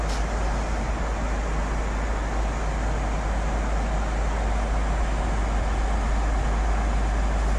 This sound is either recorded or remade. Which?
recorded